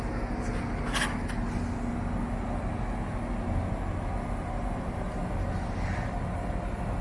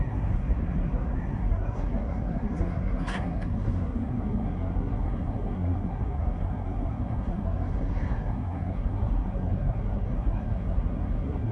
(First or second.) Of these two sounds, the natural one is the first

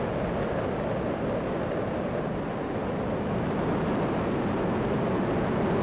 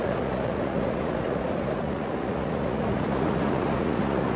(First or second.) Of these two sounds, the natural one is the first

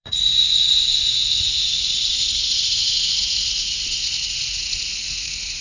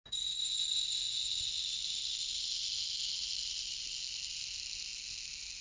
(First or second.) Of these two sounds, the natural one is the second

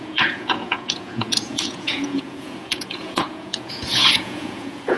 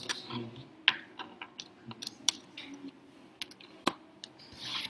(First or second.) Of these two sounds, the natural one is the second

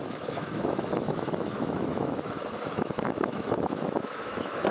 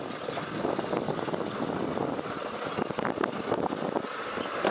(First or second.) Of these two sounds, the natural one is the second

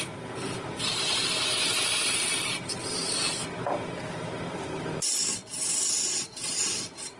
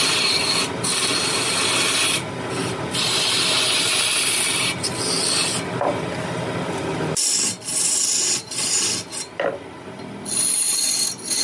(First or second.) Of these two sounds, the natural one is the second